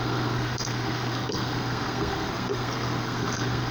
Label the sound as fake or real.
fake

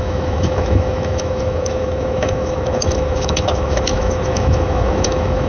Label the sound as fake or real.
fake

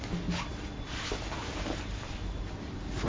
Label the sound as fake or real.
real